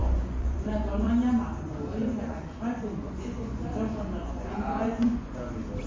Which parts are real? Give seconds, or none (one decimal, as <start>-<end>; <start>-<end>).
1.1-2.0; 5.3-5.9